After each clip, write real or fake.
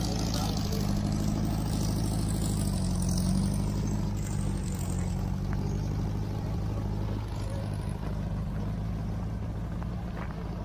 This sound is real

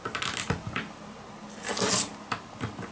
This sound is real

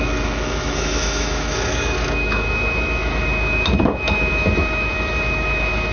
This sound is fake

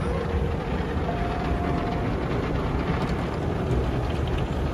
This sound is real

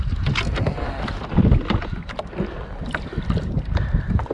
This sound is real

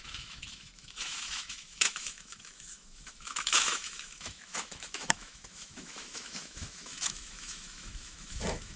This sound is fake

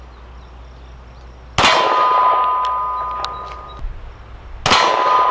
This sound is real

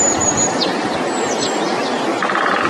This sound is real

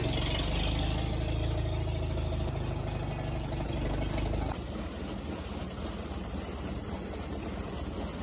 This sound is real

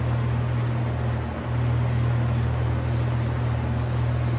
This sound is real